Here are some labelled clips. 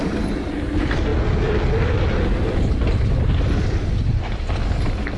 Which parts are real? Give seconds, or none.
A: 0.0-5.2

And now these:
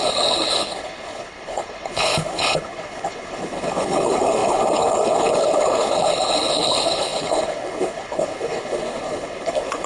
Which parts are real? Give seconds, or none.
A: none

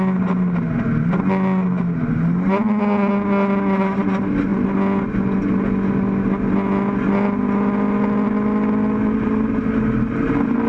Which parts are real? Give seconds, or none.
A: 0.0-10.7

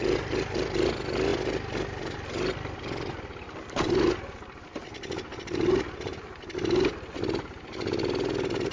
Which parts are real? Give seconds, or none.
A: 0.0-8.7

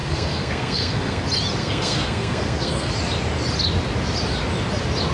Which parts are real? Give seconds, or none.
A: 1.2-1.6; 2.9-5.1

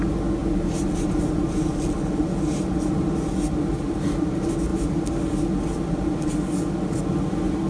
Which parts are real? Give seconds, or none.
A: 0.0-7.7